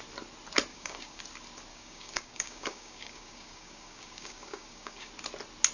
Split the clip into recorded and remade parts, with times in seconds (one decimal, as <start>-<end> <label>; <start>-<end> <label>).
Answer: 0.0-0.7 recorded; 0.7-1.2 remade; 1.2-1.7 recorded; 1.7-5.1 remade; 5.1-5.7 recorded